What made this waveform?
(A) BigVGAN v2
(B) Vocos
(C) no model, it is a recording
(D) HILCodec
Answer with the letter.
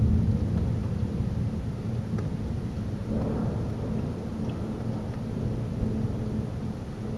C